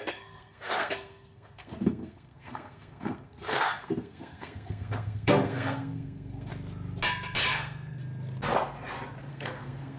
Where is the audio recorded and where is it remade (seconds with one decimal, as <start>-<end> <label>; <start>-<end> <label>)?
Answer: 0.0-6.5 remade; 6.5-7.5 recorded; 7.5-8.0 remade; 8.0-9.3 recorded; 9.3-10.0 remade